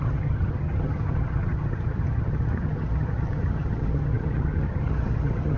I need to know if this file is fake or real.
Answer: fake